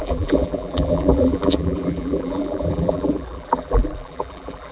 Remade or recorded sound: remade